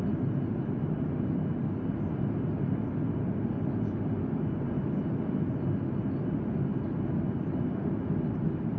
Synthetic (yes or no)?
no